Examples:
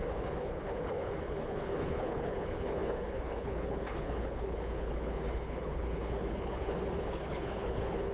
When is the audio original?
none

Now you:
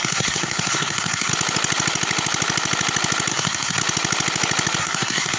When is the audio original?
1.3-3.3; 3.8-4.8

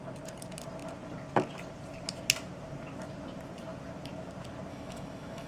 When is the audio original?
0.0-4.7

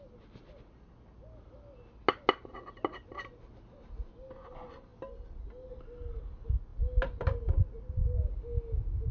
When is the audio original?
0.0-9.1

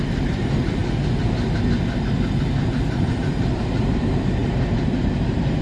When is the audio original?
0.8-2.4

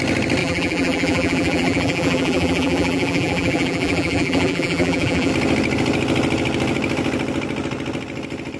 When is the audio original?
0.0-0.4; 5.3-8.6

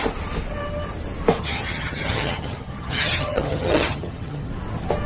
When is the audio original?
0.0-1.4; 4.5-5.1

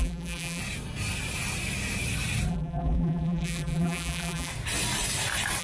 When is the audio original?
0.6-2.5; 4.5-5.6